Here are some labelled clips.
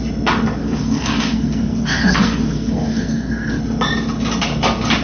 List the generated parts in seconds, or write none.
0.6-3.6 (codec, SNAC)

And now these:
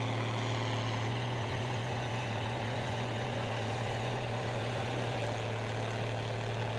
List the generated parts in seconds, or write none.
1.1-5.2 (vocoder, Vocos)

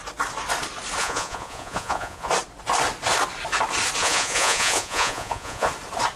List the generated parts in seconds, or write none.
1.0-2.3 (vocoder, Vocos); 4.0-5.7

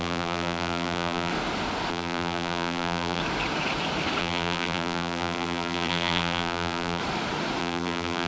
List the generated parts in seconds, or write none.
0.0-1.3 (vocoder, BigVGAN v2); 1.9-3.2; 4.2-7.0; 7.6-8.3

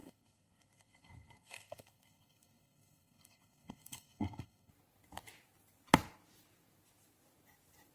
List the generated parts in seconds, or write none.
0.0-4.7 (codec, SNAC)

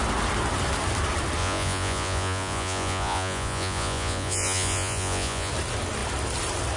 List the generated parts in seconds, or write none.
1.4-5.5 (vocoder, Vocos)

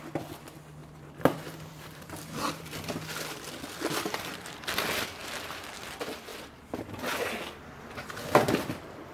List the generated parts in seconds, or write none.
0.8-2.7 (vocoder, BigVGAN v2)